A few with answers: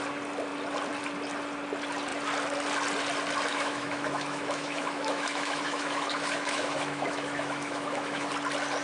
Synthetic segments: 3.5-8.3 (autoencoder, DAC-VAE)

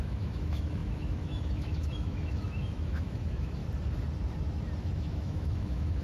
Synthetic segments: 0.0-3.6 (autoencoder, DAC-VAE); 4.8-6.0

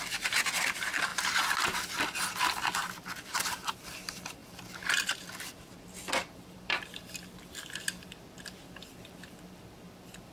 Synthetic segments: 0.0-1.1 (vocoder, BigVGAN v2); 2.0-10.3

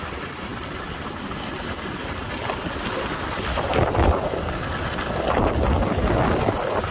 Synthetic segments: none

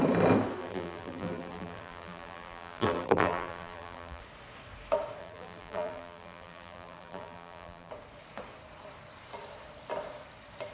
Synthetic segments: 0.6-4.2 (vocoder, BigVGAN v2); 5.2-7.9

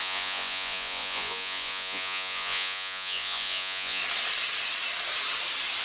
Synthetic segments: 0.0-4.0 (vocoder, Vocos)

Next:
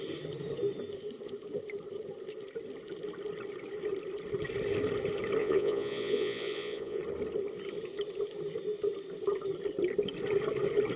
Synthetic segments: 5.4-7.0 (vocoder, Vocos)